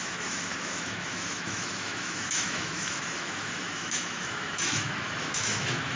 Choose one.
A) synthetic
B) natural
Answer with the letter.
A